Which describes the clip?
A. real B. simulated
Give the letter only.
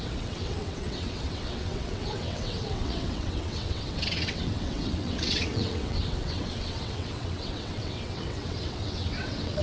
B